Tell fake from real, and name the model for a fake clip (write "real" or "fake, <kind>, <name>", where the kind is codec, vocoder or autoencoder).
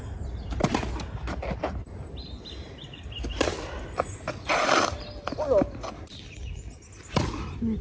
real